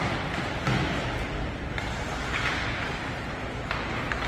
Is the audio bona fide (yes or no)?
yes